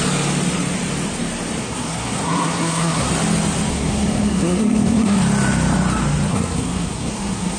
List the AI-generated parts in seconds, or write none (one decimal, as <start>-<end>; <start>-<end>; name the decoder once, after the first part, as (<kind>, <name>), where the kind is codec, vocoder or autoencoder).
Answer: 1.6-3.1 (codec, SNAC); 3.7-5.2; 6.3-7.6